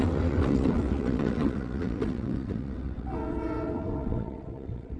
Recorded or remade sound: remade